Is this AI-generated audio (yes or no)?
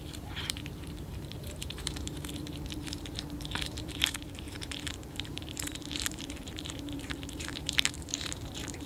yes